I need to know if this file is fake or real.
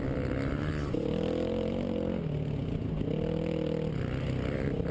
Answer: real